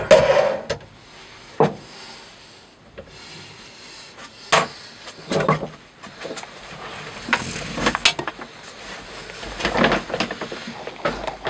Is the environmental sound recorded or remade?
recorded